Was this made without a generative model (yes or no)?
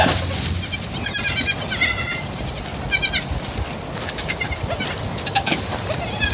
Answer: yes